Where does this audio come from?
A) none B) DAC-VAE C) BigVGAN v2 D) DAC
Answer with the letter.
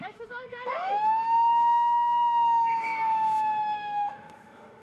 B